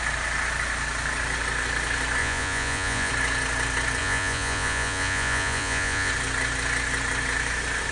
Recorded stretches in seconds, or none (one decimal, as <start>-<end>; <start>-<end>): 0.0-2.2; 3.1-4.0; 6.1-7.9